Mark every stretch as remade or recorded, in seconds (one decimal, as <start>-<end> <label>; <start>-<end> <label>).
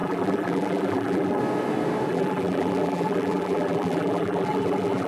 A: 0.0-1.4 remade; 1.4-2.1 recorded; 2.1-5.1 remade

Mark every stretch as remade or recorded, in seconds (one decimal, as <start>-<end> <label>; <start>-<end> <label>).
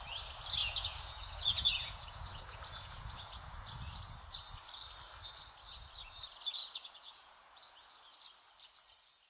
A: 0.0-0.6 recorded; 0.6-3.9 remade; 3.9-6.6 recorded; 6.6-8.0 remade; 8.0-9.3 recorded